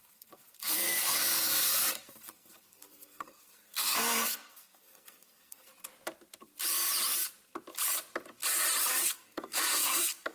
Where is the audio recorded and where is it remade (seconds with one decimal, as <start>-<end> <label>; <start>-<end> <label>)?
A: 0.0-5.7 remade; 5.7-8.9 recorded; 8.9-10.3 remade